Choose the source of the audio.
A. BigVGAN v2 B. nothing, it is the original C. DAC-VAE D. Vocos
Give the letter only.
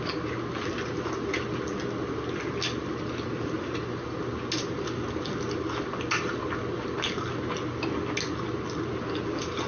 B